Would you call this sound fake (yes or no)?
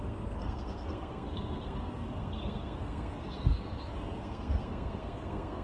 yes